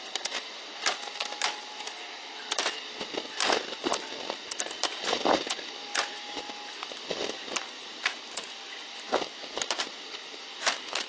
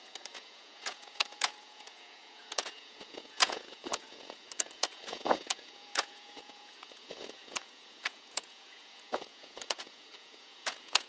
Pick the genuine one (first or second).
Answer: first